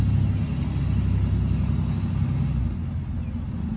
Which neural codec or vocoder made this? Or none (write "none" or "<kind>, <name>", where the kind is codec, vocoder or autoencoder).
none